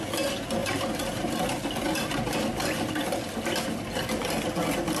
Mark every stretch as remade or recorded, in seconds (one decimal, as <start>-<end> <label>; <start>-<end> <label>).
0.0-5.0 recorded